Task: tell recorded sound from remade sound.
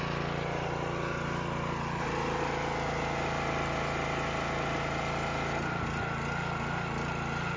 recorded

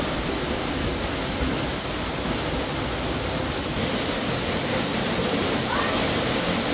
recorded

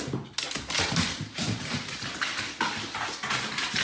recorded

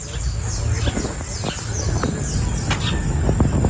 recorded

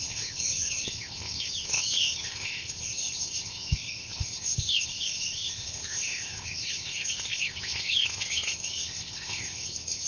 remade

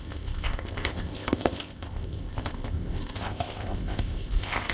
remade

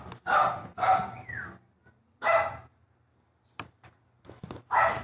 recorded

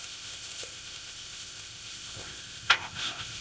remade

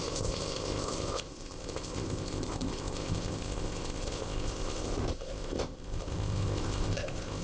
remade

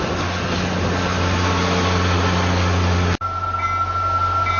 recorded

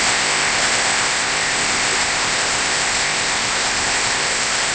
remade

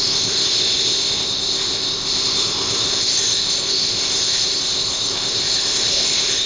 remade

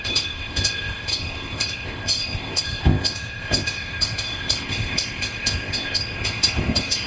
remade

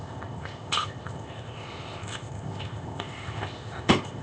remade